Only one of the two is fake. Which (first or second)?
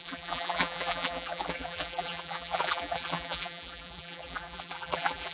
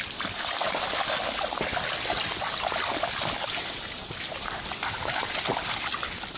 first